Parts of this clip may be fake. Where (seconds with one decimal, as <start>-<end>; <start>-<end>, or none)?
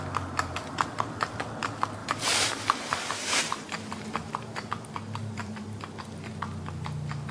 2.0-4.7; 5.2-5.8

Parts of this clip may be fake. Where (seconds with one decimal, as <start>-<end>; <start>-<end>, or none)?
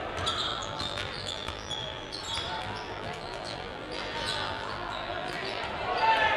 0.5-2.2; 2.6-5.6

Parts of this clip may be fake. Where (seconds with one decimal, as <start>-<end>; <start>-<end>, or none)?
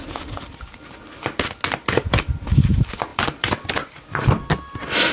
3.1-3.7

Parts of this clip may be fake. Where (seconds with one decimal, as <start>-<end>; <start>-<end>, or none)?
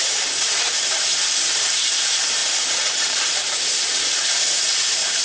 0.0-5.2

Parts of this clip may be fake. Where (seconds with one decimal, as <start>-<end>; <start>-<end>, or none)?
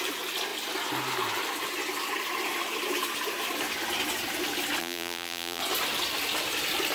4.8-5.6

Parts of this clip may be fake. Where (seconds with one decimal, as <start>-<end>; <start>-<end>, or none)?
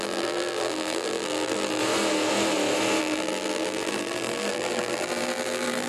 0.0-1.8; 3.0-5.9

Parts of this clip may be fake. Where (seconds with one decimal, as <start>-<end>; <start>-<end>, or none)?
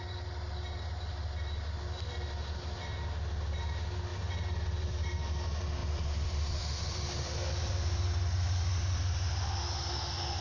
4.1-5.1; 5.8-7.9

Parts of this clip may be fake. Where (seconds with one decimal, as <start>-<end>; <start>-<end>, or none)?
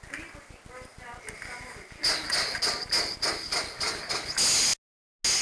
none